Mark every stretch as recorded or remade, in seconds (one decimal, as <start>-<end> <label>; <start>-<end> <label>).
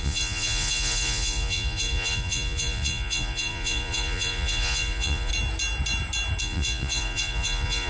0.0-5.3 remade; 5.3-6.4 recorded; 6.4-7.9 remade